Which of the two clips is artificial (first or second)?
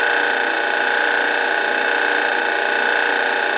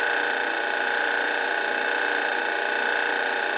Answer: second